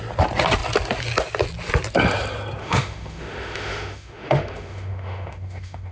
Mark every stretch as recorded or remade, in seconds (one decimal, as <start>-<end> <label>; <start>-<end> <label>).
0.0-2.6 recorded; 2.6-5.9 remade